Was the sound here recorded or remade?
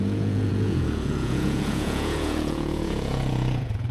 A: remade